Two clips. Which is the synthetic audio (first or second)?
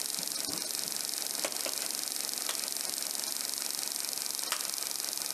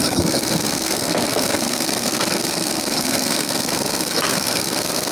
second